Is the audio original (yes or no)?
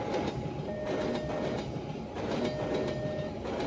yes